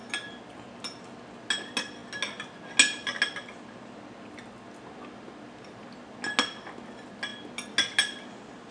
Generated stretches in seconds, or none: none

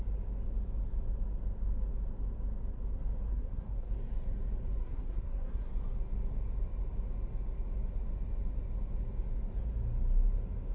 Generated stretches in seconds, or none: 3.3-3.9 (codec, SNAC); 4.8-5.7

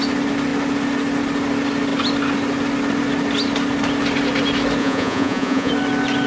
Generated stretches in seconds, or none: 4.8-5.7 (vocoder, Vocos)

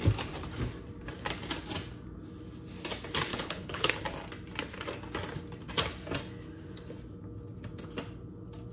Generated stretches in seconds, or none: 3.3-3.9 (codec, HILCodec)